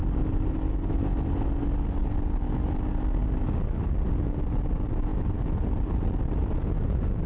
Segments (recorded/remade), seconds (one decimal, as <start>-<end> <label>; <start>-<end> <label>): 0.0-2.0 remade; 2.0-3.2 recorded; 3.2-4.1 remade; 4.1-5.1 recorded; 5.1-6.6 remade; 6.6-7.3 recorded